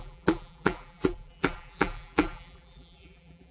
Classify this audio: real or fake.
fake